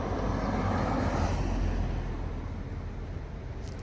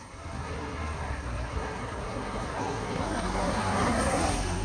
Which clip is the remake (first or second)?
second